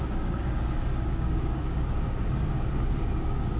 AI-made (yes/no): yes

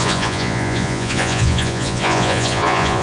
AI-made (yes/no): yes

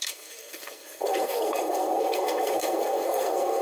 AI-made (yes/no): yes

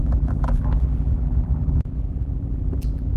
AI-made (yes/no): yes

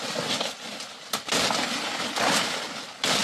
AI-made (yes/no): no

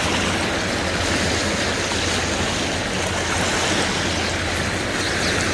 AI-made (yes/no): no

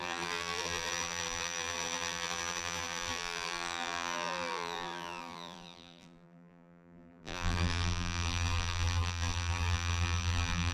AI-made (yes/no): yes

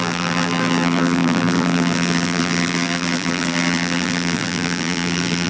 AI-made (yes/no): yes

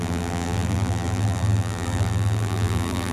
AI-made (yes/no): yes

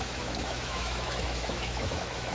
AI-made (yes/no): yes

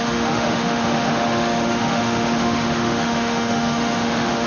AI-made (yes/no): yes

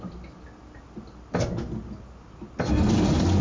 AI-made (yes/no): no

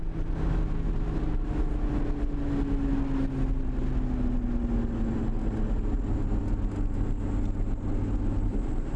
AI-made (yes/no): no